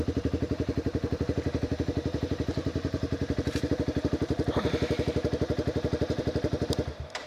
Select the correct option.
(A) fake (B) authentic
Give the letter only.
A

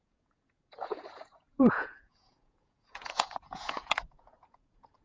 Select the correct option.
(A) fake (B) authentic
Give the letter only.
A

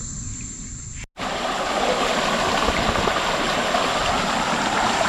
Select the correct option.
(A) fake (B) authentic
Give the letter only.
B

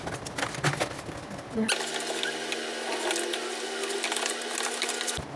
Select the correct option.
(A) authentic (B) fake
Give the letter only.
A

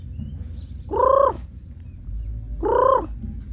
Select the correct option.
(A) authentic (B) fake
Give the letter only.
A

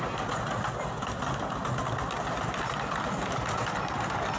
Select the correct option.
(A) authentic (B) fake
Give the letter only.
A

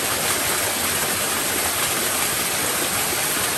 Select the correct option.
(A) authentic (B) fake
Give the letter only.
A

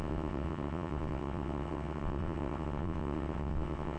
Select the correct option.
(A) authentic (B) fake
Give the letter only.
B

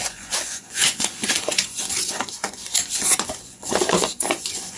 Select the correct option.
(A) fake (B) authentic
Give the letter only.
A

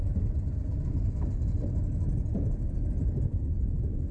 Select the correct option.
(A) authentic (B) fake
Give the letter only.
A